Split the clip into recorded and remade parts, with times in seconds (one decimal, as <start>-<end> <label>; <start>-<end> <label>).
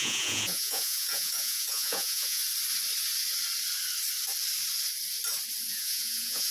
0.0-2.4 remade; 2.4-5.7 recorded; 5.7-6.5 remade